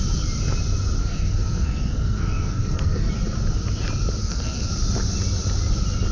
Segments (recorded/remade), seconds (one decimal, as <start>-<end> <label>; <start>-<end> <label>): 0.0-1.0 recorded; 1.0-3.1 remade; 3.1-4.2 recorded; 4.2-4.7 remade; 4.7-6.1 recorded